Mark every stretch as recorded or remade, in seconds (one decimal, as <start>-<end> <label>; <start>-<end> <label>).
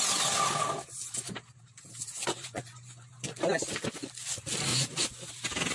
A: 0.0-2.2 recorded; 2.2-3.1 remade; 3.1-4.7 recorded; 4.7-5.3 remade; 5.3-5.7 recorded